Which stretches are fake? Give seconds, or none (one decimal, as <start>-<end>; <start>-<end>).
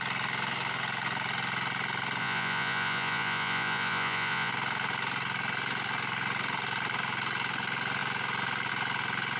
2.2-4.5